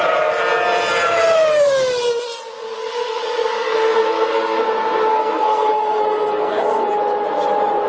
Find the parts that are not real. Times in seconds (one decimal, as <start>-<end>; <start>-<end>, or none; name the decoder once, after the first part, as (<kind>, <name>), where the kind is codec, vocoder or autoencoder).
2.8-4.6 (codec, SNAC); 5.1-6.9